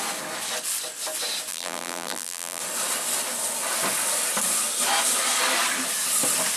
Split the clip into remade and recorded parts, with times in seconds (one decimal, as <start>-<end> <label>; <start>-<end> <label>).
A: 0.0-1.5 recorded; 1.5-2.6 remade; 2.6-6.6 recorded